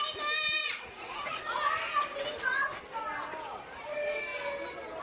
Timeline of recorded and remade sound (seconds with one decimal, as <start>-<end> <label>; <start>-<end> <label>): 0.0-0.6 recorded; 0.6-1.4 remade; 1.4-2.1 recorded; 2.1-2.8 remade; 2.8-5.0 recorded